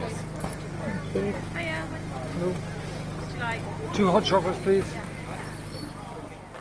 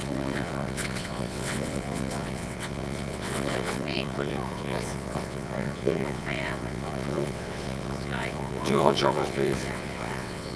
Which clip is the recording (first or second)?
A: first